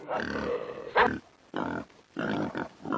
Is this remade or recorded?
recorded